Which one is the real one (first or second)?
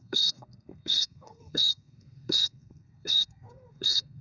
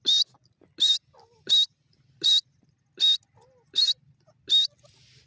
second